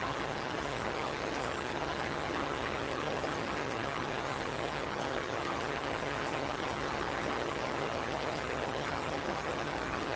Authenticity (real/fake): fake